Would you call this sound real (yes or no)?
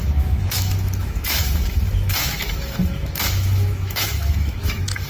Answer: no